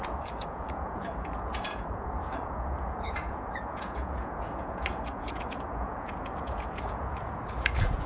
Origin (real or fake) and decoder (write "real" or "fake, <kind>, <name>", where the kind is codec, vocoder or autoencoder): fake, vocoder, Vocos